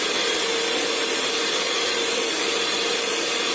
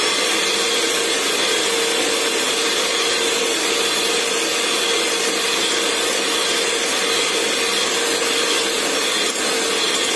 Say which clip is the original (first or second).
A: second